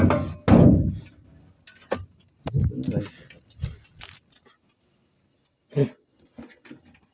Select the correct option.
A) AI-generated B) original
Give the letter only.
B